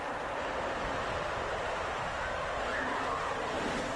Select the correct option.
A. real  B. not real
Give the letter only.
A